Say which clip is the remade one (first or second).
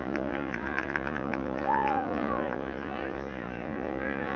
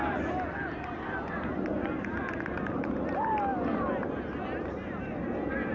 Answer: first